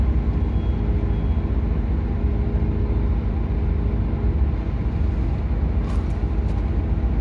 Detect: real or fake real